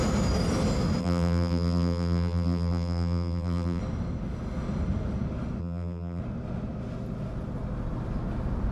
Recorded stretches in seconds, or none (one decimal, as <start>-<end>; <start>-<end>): 0.0-1.0; 3.8-5.6; 6.2-8.7